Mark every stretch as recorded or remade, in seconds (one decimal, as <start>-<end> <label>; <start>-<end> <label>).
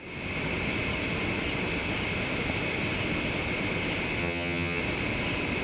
0.0-4.2 recorded; 4.2-4.8 remade; 4.8-5.6 recorded